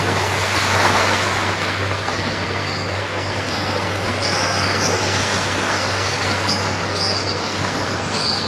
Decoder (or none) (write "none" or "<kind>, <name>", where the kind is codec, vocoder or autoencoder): codec, SNAC